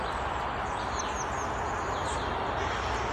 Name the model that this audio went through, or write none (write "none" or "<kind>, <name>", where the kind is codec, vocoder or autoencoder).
none